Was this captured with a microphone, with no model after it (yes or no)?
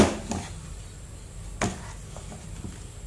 yes